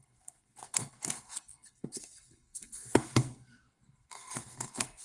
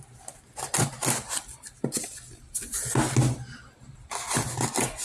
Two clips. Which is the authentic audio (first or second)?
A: second